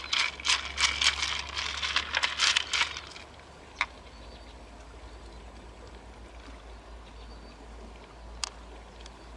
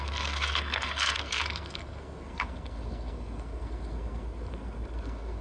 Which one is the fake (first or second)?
second